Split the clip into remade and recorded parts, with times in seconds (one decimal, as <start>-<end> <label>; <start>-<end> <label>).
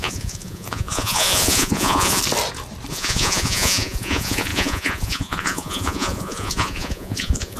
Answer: 0.0-2.2 remade; 2.2-2.9 recorded; 2.9-7.6 remade